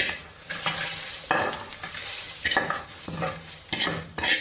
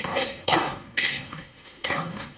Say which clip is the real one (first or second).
first